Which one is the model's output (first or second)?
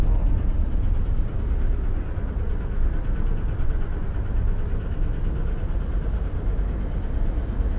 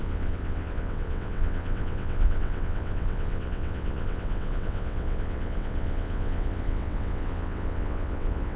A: second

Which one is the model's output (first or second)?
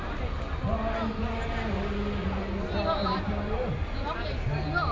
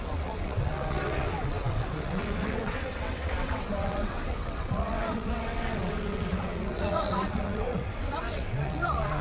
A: second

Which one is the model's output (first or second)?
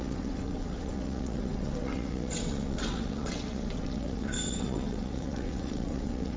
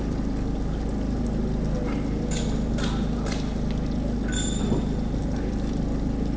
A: first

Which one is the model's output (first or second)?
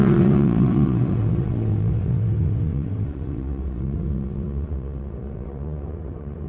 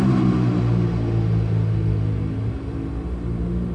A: first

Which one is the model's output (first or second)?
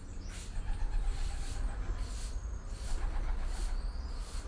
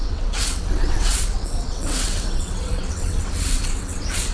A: second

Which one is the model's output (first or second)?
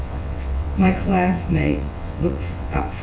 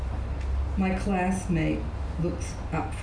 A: first